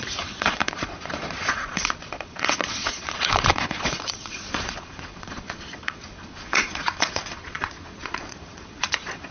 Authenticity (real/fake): fake